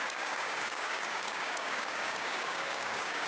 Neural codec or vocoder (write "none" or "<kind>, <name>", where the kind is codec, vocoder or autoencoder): codec, DAC